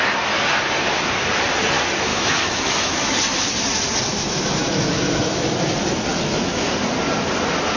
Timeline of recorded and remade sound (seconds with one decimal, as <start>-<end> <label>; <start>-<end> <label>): 0.0-2.1 recorded; 2.1-3.2 remade; 3.2-4.1 recorded; 4.1-5.5 remade; 5.5-6.1 recorded; 6.1-6.7 remade; 6.7-7.8 recorded